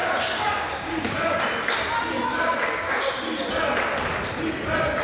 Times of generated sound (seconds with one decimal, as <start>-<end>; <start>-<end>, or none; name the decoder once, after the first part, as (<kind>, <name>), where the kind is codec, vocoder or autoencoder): 0.0-1.4 (codec, DAC); 2.3-3.1